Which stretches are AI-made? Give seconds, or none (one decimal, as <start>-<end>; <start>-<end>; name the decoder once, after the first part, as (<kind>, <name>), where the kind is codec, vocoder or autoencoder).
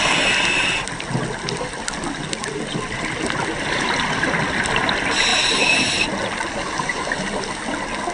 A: none